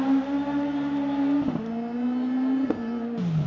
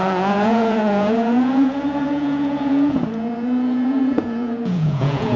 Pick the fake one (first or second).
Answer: second